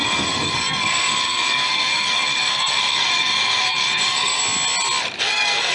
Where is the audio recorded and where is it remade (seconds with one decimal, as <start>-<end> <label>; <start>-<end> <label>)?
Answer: 0.0-4.4 remade; 4.4-5.2 recorded; 5.2-5.7 remade